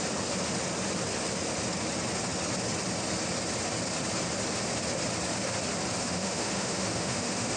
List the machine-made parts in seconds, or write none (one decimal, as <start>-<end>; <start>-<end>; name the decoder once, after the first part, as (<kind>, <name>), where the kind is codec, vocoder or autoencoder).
6.0-7.6 (autoencoder, DAC-VAE)